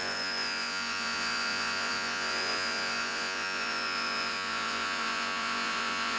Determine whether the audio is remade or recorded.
remade